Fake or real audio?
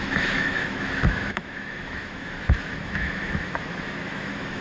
fake